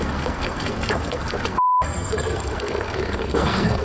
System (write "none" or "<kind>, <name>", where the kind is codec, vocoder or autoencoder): codec, SNAC